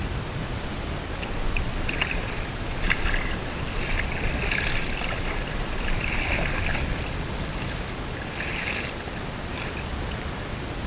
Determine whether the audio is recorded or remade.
recorded